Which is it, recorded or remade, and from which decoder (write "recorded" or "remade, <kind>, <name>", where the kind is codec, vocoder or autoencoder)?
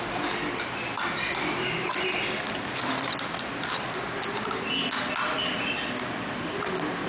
recorded